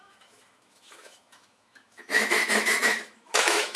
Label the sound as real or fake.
fake